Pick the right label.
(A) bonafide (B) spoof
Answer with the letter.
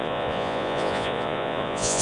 B